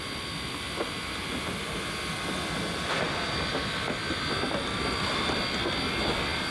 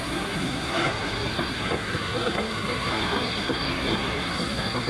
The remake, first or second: second